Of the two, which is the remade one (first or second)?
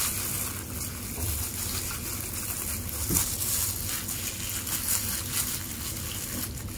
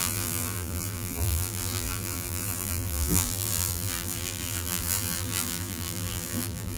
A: second